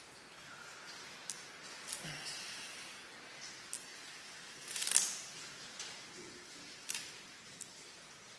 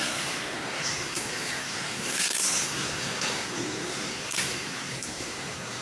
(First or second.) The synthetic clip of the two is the second